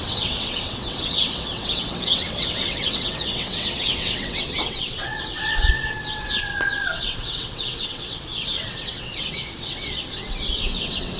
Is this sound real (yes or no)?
no